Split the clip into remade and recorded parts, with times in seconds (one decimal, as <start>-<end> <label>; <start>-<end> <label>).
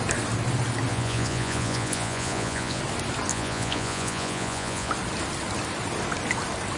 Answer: 0.0-0.9 recorded; 0.9-2.8 remade; 2.8-3.3 recorded; 3.3-4.9 remade; 4.9-6.8 recorded